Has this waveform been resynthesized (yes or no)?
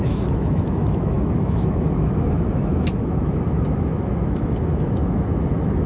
yes